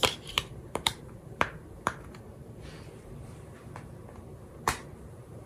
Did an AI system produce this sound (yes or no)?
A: yes